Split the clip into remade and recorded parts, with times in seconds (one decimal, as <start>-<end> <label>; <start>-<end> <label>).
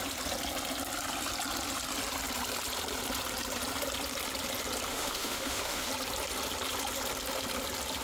0.0-4.9 recorded; 4.9-5.9 remade; 5.9-8.0 recorded